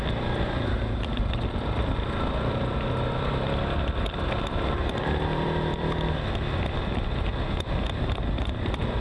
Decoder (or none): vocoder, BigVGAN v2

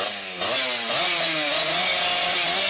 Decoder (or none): none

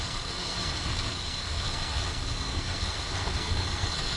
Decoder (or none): codec, SNAC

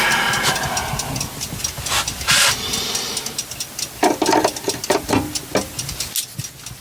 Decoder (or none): none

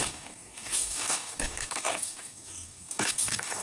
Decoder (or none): codec, DAC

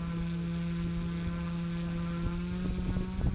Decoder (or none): none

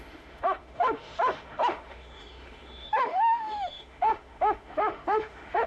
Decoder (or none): autoencoder, DAC-VAE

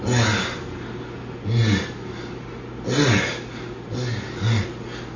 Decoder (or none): none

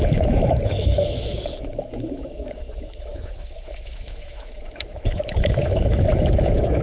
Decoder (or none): autoencoder, DAC-VAE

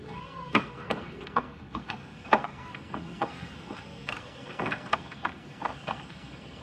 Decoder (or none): codec, SNAC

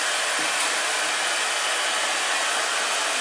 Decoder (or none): none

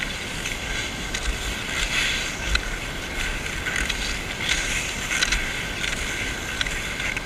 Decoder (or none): none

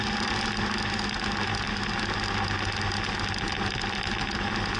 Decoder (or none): none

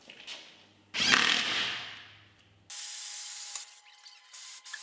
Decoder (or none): none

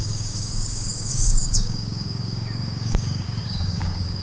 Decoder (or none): codec, DAC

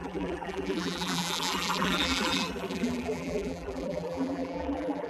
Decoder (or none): vocoder, BigVGAN v2